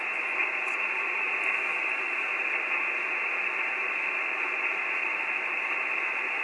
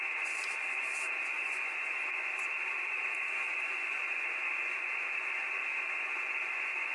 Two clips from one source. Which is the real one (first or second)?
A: first